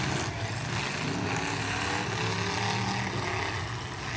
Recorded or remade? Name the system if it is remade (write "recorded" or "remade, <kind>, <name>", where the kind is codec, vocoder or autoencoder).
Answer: recorded